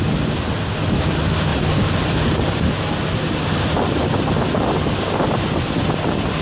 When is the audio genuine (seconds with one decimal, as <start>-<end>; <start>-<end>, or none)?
0.0-1.5; 2.1-6.4